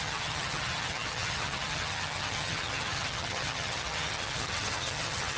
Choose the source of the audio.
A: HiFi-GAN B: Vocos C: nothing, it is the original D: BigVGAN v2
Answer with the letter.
A